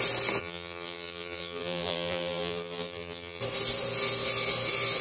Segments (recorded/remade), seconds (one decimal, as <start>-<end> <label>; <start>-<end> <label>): 0.0-0.4 recorded; 0.4-3.4 remade; 3.4-5.0 recorded